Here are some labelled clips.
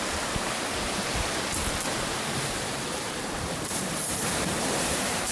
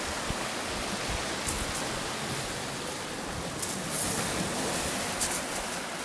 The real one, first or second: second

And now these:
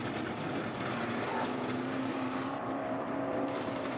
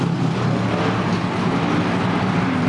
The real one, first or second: second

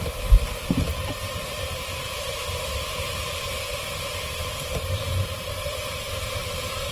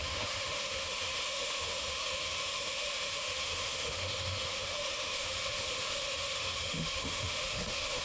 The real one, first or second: first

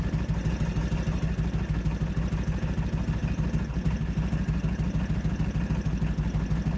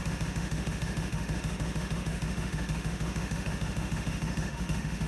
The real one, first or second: first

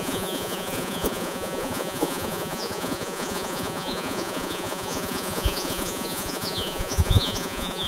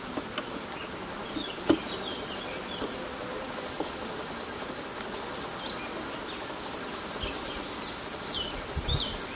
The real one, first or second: second